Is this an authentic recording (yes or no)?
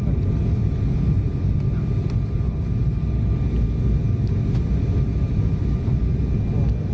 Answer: yes